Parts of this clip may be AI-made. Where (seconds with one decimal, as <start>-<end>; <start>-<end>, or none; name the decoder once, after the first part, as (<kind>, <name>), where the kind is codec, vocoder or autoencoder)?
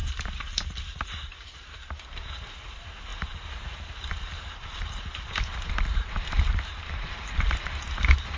0.0-8.4 (vocoder, BigVGAN v2)